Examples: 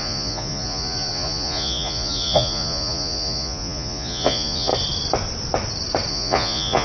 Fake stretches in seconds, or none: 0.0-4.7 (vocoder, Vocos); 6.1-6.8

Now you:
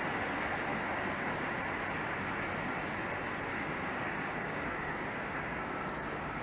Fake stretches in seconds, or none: 0.7-1.4 (codec, DAC); 3.5-6.4

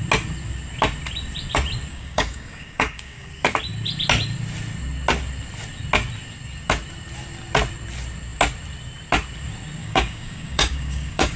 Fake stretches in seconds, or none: 1.9-3.3 (codec, DAC); 9.8-11.4

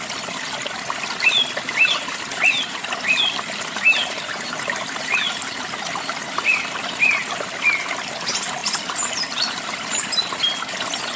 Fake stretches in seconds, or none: 0.0-11.2 (vocoder, BigVGAN v2)

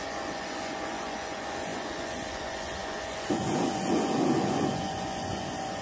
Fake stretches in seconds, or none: 0.0-5.8 (vocoder, Vocos)